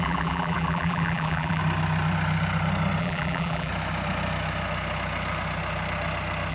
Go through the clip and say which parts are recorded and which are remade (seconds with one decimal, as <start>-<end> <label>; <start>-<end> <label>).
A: 0.0-1.6 remade; 1.6-3.0 recorded; 3.0-3.7 remade; 3.7-6.5 recorded